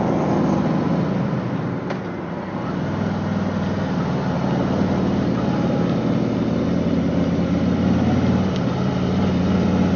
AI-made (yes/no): no